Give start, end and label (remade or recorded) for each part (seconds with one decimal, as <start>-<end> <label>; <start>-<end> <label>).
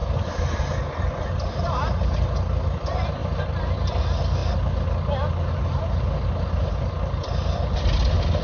0.0-3.2 recorded; 3.2-4.0 remade; 4.0-8.4 recorded